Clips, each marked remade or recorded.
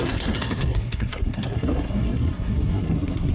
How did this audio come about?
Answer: remade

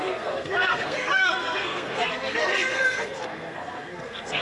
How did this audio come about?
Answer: remade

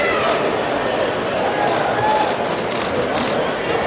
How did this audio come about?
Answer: recorded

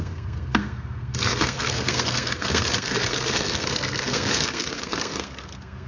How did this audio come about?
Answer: remade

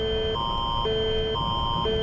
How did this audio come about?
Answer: recorded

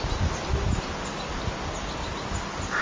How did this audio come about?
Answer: recorded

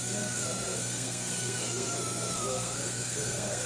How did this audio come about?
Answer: remade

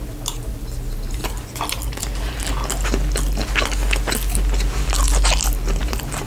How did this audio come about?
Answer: recorded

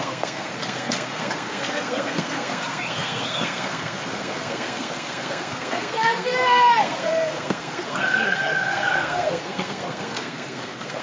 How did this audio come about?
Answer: remade